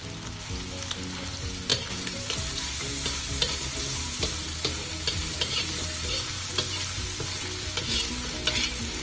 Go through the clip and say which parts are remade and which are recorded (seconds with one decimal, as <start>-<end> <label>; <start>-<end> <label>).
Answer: 0.0-1.7 recorded; 1.7-5.8 remade; 5.8-9.0 recorded